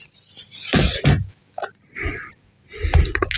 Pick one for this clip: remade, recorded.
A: recorded